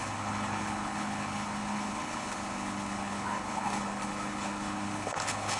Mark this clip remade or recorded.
remade